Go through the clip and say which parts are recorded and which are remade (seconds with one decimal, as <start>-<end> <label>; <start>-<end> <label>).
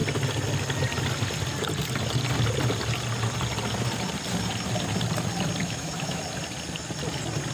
0.0-5.6 recorded; 5.6-6.2 remade; 6.2-7.5 recorded